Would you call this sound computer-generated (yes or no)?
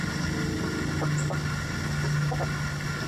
no